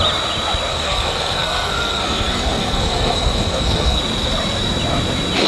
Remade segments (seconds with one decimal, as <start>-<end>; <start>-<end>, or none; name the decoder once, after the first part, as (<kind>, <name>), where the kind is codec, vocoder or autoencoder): 0.7-4.0 (codec, SNAC)